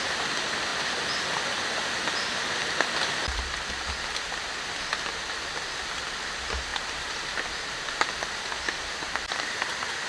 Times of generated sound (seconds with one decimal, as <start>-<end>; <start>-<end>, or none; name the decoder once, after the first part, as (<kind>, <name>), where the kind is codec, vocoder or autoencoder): none